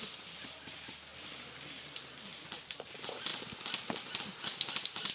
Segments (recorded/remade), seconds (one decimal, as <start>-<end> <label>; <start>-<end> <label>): 0.0-5.1 recorded